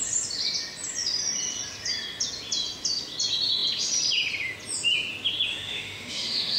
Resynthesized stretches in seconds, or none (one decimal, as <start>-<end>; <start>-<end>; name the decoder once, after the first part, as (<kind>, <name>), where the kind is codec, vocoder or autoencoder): 5.5-6.6 (autoencoder, DAC-VAE)